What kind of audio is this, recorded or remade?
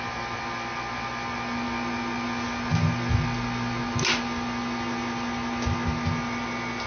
recorded